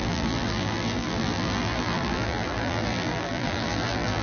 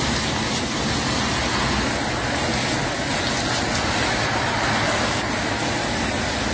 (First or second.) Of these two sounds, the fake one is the first